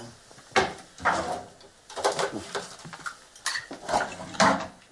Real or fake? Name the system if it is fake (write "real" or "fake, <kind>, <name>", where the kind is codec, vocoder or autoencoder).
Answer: real